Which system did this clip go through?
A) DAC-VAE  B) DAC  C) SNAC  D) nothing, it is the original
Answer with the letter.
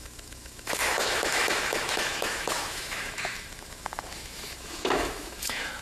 A